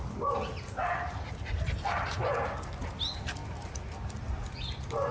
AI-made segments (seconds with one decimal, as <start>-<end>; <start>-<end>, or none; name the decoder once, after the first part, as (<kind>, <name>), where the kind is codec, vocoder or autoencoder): none